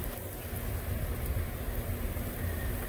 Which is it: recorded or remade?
recorded